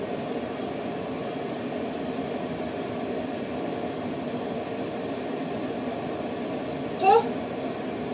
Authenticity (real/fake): fake